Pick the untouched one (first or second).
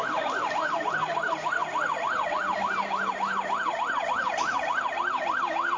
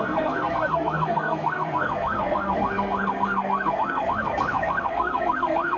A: first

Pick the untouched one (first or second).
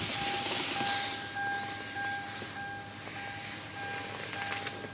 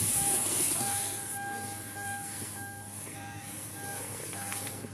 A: first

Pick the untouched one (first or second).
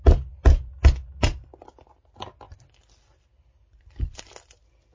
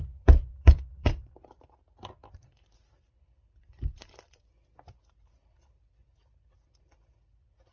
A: first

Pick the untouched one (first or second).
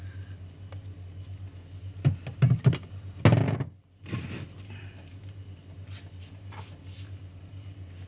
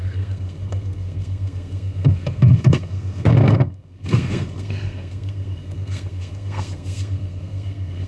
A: first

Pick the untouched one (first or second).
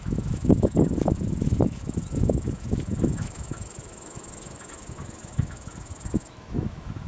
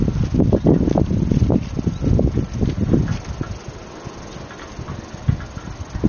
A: second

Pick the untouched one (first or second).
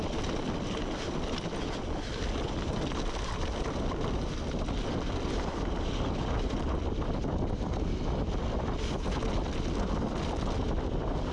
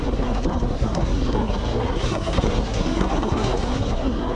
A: first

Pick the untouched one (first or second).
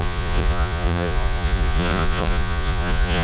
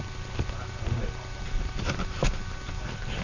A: second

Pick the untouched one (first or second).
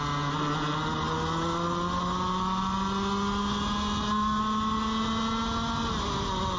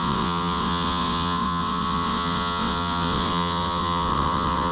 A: first